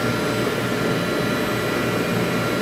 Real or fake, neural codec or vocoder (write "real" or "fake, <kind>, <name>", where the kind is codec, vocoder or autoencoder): real